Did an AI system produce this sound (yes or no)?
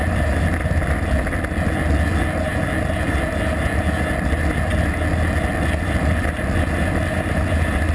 no